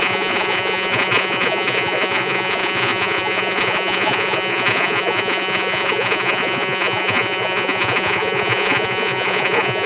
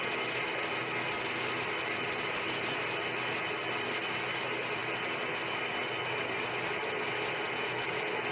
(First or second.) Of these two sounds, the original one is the second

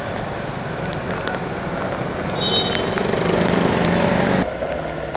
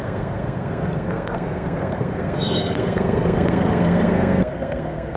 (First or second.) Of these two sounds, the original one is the first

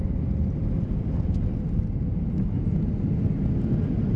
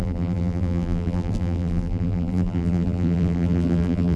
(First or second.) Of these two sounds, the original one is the first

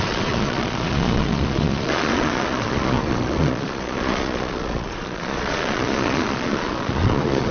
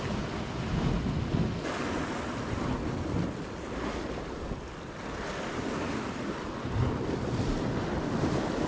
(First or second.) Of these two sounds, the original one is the second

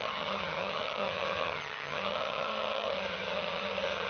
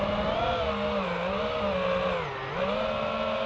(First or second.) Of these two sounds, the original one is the second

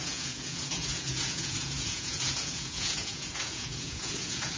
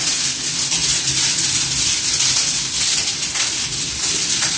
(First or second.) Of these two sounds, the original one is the second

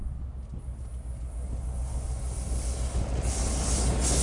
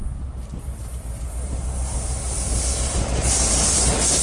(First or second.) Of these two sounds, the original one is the first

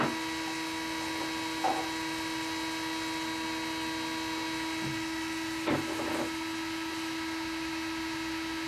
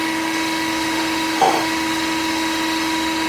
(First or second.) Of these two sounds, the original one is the first